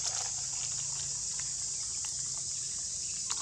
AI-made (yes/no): no